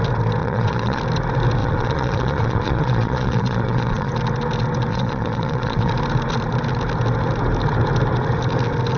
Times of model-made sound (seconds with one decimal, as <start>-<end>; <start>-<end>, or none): 0.4-1.0; 1.6-4.1; 4.9-5.9